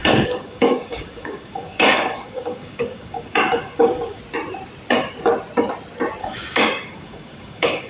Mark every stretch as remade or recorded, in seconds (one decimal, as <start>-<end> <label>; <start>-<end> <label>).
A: 0.0-4.2 remade; 4.2-6.2 recorded; 6.2-7.9 remade